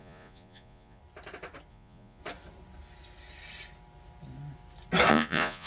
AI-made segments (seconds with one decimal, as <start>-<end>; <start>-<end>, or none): 0.0-1.0; 1.7-2.2; 5.1-5.7